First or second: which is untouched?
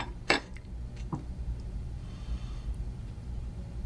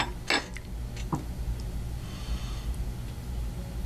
second